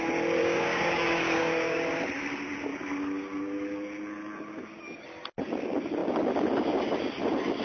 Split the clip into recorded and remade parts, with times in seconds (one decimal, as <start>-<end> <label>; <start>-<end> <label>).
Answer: 0.0-0.4 recorded; 0.4-1.8 remade; 1.8-7.6 recorded